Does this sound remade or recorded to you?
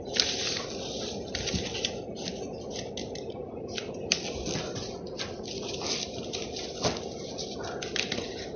recorded